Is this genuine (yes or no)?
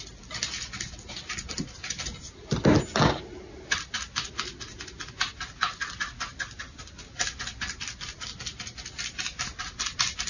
yes